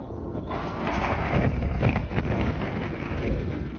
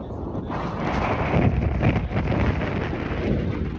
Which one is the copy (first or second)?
first